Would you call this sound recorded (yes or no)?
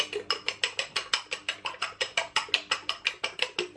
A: yes